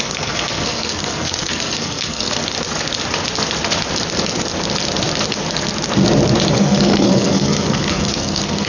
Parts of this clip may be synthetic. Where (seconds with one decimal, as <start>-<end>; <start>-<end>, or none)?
0.0-2.4; 6.5-8.7